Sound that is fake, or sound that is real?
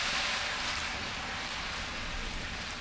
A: real